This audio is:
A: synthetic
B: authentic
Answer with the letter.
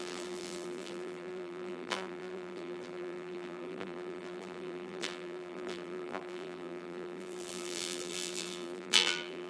A